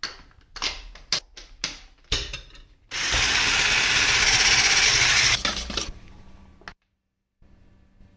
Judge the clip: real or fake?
real